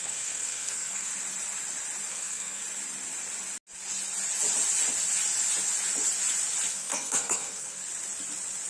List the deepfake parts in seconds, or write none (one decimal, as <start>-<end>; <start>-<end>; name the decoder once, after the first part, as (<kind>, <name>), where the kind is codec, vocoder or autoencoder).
0.0-1.1 (codec, SNAC); 2.1-2.6; 6.7-7.8